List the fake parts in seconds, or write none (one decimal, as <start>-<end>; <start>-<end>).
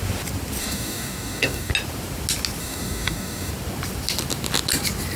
0.6-1.7; 2.6-3.5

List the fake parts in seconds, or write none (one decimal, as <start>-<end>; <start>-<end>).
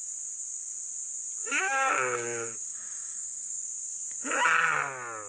1.4-3.7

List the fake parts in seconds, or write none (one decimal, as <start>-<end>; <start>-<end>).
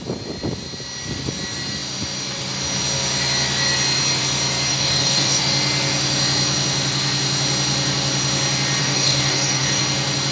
4.7-5.4; 8.8-9.8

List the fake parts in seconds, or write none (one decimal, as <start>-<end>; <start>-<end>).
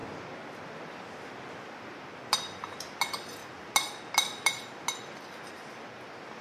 none